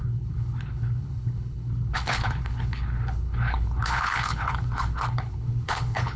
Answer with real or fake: fake